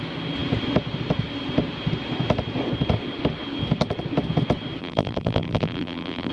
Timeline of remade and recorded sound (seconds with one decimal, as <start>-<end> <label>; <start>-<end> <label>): 0.0-4.8 recorded; 4.8-6.3 remade